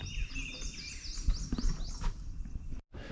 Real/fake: real